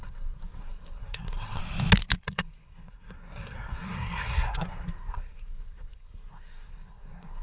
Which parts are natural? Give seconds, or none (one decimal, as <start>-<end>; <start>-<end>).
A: 1.6-2.2